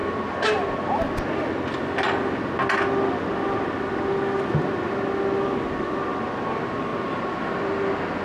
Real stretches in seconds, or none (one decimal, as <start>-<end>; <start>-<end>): 0.0-8.2